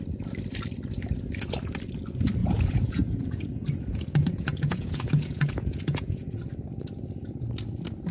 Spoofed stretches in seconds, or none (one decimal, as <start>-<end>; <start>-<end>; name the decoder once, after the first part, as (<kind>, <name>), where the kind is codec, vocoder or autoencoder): 2.4-3.4 (vocoder, Vocos); 3.9-6.4